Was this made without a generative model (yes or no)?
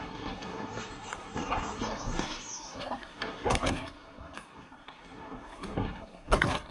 no